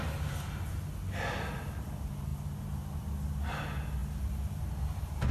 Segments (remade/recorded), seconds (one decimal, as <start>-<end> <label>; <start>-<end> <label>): 0.0-5.3 recorded